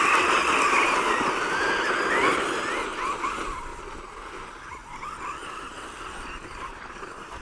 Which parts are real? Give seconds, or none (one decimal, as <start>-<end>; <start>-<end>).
0.0-2.9; 3.7-4.8